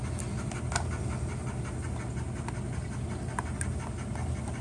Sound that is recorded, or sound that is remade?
recorded